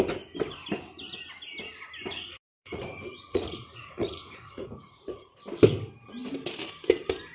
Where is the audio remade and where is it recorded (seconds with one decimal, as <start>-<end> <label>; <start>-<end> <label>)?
0.0-2.1 recorded; 2.1-5.4 remade; 5.4-7.3 recorded